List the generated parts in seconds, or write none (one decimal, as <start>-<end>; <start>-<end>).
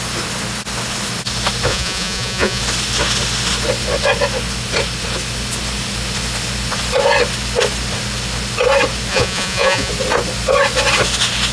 1.7-2.6; 9.1-9.9